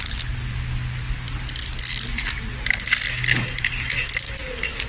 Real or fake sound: real